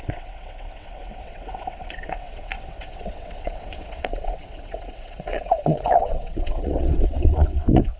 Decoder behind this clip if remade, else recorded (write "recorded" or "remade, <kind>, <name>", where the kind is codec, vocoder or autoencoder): remade, vocoder, WaveNeXt